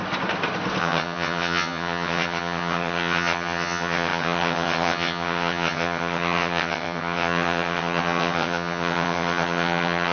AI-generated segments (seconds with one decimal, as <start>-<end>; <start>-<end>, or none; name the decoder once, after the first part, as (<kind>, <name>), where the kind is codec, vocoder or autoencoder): 0.8-10.1 (vocoder, HiFi-GAN)